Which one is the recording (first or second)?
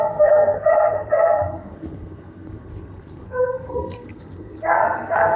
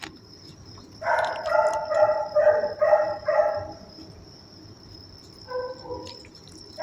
second